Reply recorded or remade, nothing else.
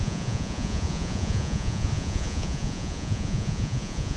remade